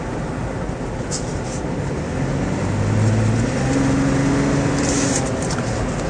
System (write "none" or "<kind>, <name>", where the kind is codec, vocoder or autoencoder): none